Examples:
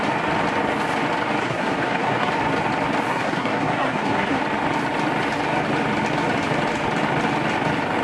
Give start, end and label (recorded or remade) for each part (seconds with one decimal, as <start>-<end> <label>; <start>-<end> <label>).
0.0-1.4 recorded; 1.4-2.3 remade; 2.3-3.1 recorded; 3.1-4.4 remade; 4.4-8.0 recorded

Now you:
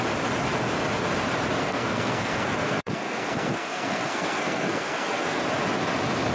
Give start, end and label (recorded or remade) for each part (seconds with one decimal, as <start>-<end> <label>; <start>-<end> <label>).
0.0-1.6 recorded; 1.6-5.4 remade; 5.4-6.3 recorded

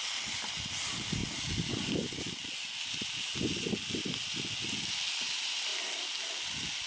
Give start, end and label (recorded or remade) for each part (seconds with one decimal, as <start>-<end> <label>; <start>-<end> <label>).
0.0-6.9 recorded